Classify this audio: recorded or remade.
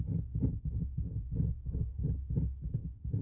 recorded